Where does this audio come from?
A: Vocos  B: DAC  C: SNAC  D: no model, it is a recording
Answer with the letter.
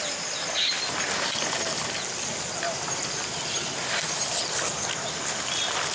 D